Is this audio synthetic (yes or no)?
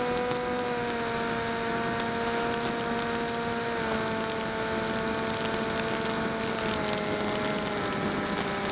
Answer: no